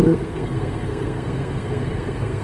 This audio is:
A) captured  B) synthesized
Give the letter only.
B